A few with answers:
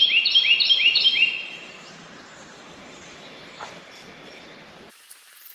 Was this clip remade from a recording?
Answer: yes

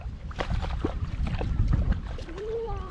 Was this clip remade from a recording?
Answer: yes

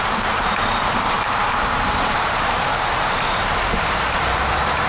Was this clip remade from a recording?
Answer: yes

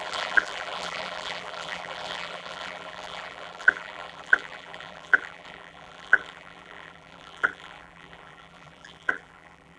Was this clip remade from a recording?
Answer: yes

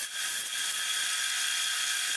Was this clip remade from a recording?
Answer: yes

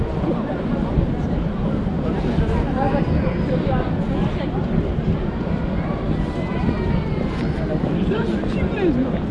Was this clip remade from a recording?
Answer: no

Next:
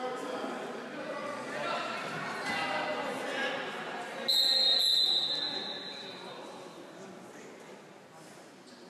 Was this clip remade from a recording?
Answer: no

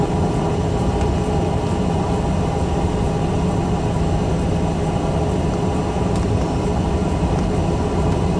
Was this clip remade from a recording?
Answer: no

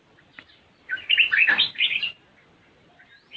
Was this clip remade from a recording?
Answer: yes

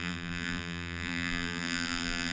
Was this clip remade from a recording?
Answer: yes